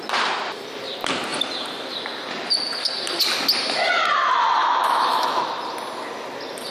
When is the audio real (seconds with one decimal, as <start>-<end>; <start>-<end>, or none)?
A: 0.0-4.6; 5.4-6.7